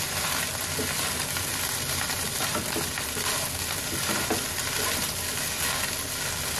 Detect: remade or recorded recorded